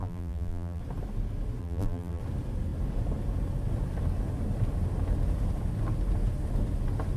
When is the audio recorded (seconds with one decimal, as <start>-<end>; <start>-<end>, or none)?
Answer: 0.8-1.6; 2.2-7.2